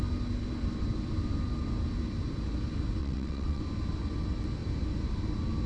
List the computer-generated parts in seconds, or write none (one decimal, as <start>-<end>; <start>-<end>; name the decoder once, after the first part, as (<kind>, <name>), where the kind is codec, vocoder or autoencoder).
3.0-3.6 (vocoder, WaveNeXt)